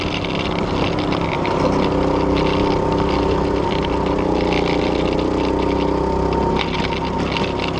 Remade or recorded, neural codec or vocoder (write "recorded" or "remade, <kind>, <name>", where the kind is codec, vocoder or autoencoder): recorded